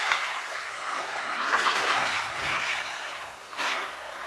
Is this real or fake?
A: fake